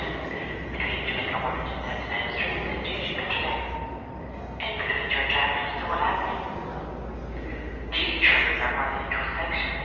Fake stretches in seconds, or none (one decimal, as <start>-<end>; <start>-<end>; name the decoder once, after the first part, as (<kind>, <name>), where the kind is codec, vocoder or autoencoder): none